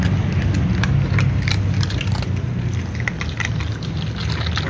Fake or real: real